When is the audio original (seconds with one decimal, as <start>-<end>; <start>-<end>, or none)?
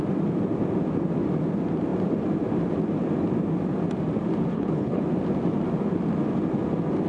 0.0-4.5; 5.0-7.1